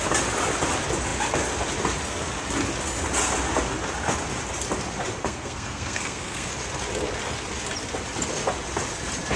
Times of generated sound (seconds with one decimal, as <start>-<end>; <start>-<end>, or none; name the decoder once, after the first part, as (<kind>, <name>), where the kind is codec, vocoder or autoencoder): 5.2-6.5 (codec, SNAC)